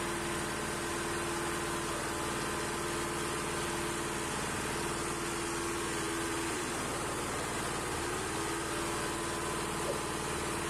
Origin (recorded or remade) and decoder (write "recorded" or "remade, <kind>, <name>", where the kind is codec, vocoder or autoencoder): recorded